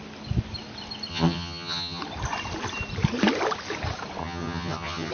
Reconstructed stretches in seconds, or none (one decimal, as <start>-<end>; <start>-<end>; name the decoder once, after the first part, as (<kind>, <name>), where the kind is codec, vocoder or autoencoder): 1.1-2.0 (vocoder, HiFi-GAN); 4.2-5.1